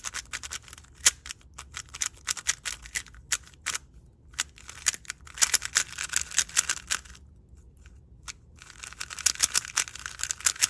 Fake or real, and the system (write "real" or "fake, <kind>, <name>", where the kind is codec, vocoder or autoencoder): real